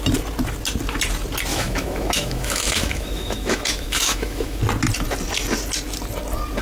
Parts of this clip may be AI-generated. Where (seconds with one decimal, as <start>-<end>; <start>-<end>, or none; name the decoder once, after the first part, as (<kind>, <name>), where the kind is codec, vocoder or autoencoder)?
1.5-4.6 (autoencoder, DAC-VAE)